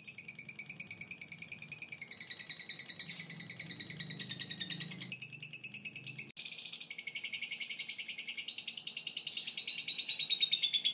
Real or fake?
real